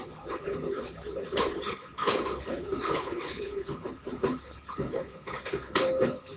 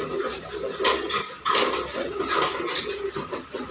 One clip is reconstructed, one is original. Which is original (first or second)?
second